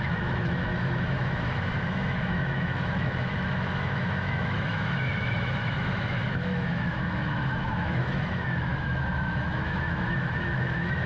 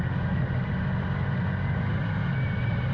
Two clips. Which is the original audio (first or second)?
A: second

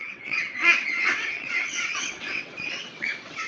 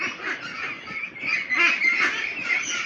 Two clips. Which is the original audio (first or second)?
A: second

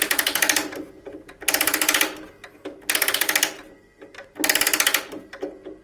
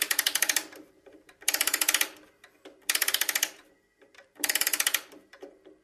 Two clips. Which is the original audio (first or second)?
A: first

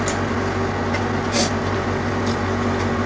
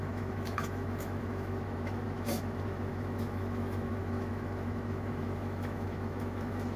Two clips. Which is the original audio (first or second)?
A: first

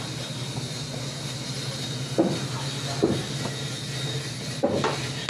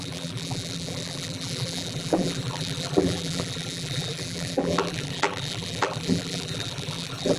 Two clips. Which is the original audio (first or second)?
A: first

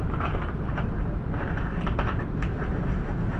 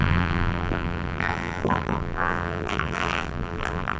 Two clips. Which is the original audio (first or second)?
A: first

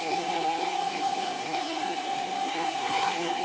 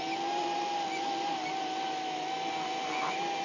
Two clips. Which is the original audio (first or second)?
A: second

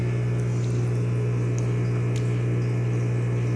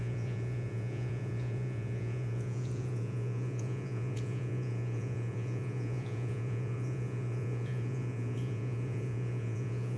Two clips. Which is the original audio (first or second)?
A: first